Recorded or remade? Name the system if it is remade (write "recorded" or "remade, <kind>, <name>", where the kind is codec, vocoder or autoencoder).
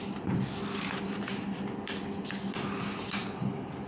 recorded